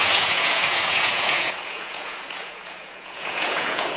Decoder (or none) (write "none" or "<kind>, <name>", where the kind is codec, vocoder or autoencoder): vocoder, Vocos